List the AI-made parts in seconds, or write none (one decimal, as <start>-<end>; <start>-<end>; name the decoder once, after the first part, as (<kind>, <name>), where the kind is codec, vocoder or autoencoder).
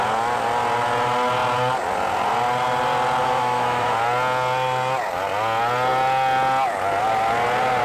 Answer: 3.2-3.9 (autoencoder, DAC-VAE)